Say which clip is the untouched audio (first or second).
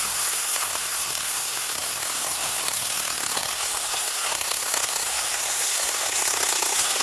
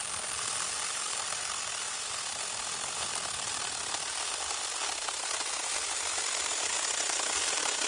second